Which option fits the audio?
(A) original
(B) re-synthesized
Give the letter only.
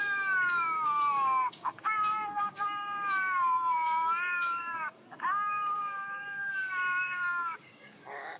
B